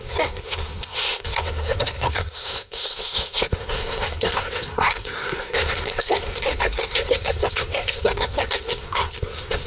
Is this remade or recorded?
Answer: remade